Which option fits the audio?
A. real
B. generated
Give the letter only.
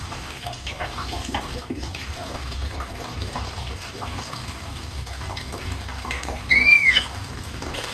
B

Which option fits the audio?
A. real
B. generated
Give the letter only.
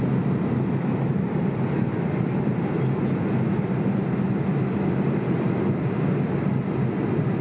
A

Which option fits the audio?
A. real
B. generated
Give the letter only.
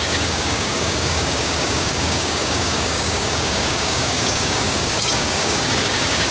B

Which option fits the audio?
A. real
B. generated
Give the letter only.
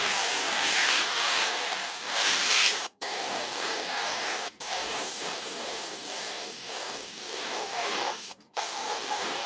B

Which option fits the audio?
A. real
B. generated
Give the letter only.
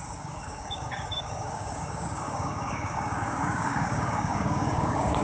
B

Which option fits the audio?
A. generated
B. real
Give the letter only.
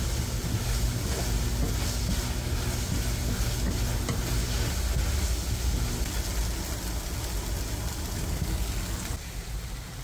B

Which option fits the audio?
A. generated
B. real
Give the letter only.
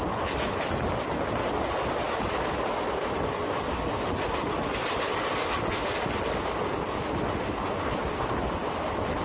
B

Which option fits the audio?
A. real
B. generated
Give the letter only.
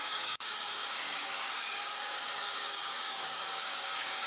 B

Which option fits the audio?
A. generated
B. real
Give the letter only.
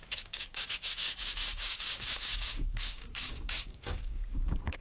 A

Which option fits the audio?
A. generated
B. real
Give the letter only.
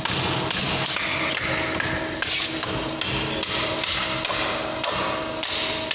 B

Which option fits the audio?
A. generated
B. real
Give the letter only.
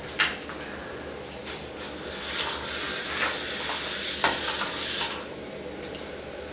B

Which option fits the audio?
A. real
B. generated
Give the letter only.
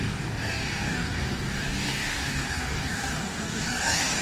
B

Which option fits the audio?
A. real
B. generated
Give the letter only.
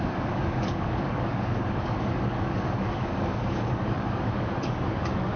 B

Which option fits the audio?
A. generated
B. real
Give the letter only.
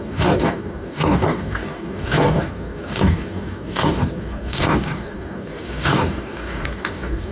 A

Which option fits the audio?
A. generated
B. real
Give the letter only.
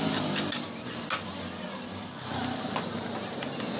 B